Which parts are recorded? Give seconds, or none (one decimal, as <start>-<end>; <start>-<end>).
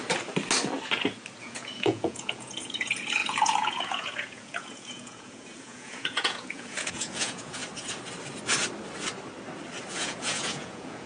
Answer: 0.0-1.4; 7.6-9.9